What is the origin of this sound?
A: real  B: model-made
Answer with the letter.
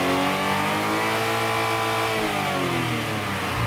A